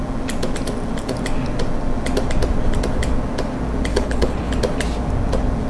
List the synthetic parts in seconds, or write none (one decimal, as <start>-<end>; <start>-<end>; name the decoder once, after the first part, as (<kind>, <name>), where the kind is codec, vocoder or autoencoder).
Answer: 3.9-4.5 (codec, HILCodec)